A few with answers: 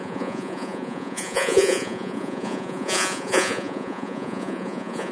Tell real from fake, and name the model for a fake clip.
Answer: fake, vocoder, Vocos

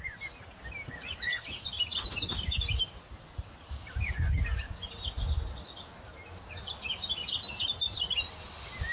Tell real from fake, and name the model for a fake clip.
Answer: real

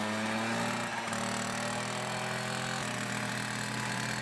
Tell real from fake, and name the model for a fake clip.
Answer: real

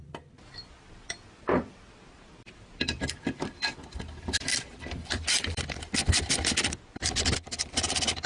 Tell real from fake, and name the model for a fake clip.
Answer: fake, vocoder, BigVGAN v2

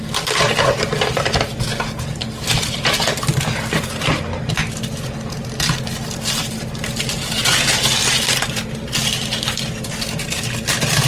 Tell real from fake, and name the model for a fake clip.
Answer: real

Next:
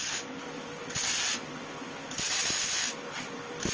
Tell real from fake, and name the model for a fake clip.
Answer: fake, vocoder, BigVGAN v2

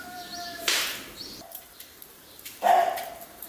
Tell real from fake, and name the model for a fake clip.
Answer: fake, vocoder, BigVGAN v2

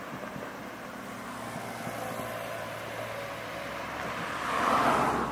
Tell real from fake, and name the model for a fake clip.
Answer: real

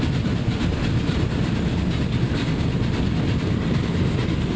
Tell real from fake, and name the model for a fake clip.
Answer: real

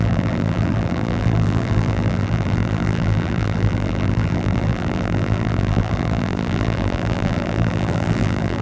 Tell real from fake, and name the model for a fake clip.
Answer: fake, vocoder, BigVGAN v2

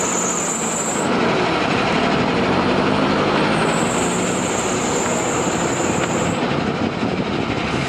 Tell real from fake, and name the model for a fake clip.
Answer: real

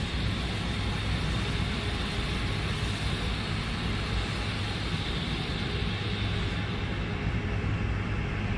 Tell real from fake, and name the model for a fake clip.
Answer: real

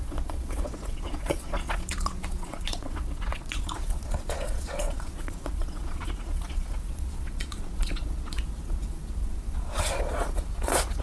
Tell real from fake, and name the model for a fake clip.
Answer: fake, vocoder, Vocos